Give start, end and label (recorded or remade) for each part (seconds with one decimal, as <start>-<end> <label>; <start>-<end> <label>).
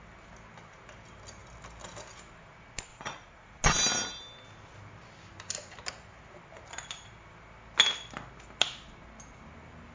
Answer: 0.0-2.9 recorded; 2.9-3.6 remade; 3.6-9.9 recorded